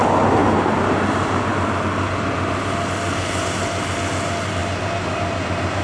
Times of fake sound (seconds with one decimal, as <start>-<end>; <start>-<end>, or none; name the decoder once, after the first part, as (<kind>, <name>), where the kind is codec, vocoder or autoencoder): 0.4-1.0 (vocoder, BigVGAN v2); 4.6-5.8